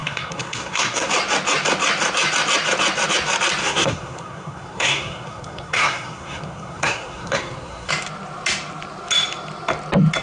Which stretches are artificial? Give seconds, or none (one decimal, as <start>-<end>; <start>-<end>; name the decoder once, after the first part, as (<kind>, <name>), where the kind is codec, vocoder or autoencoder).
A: 0.0-1.1 (codec, SNAC); 3.6-7.9